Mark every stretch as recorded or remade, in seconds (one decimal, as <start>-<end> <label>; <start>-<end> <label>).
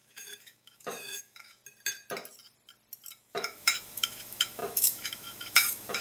0.0-1.6 remade; 1.6-3.2 recorded; 3.2-6.0 remade